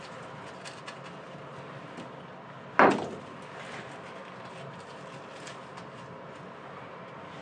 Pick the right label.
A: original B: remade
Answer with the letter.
A